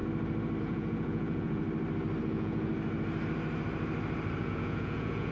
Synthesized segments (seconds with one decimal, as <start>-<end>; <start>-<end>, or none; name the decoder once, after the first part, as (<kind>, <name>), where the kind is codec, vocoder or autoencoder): 0.6-1.6 (vocoder, Vocos); 2.2-2.7; 4.4-5.3